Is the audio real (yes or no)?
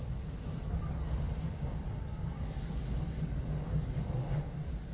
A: no